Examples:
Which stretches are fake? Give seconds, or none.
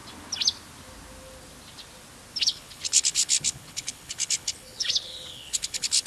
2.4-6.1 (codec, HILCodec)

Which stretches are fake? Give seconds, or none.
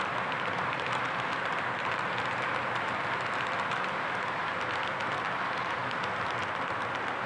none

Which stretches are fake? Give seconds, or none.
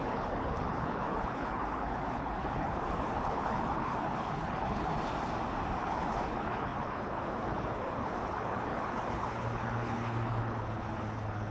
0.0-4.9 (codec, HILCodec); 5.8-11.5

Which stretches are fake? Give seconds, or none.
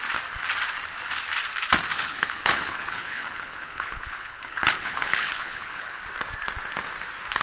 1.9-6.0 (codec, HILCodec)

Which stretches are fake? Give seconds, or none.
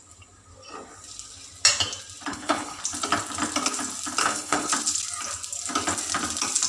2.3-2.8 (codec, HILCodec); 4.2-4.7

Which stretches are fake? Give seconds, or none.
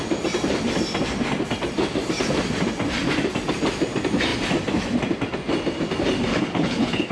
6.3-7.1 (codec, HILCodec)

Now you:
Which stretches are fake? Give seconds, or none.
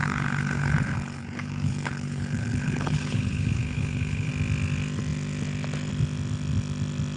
0.0-4.3 (codec, HILCodec)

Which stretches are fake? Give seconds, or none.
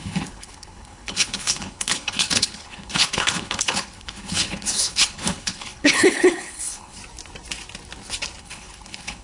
0.0-7.0 (codec, HILCodec); 8.4-9.2